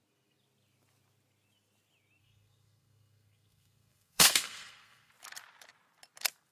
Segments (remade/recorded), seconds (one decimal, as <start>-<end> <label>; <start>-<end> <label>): 0.0-2.2 recorded; 2.2-5.1 remade; 5.1-6.5 recorded